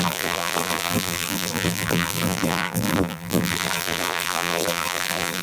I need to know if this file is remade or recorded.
remade